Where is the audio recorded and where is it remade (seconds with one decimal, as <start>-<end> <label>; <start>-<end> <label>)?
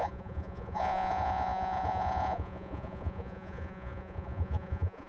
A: 0.0-5.1 remade